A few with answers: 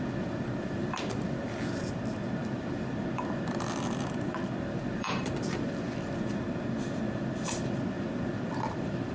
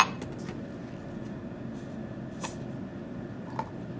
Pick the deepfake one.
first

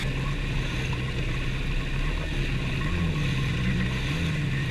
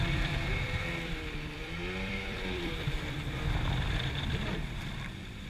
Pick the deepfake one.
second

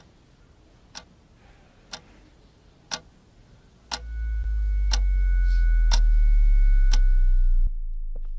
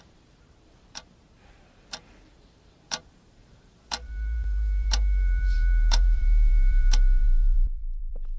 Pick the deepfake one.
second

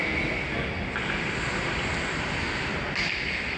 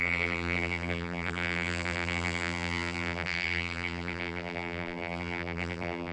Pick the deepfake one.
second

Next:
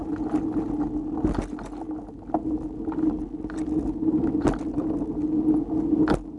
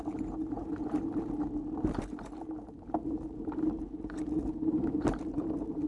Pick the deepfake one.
second